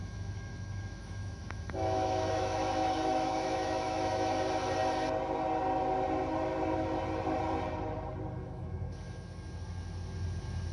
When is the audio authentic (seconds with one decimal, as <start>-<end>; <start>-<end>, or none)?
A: 4.3-8.4; 9.2-10.7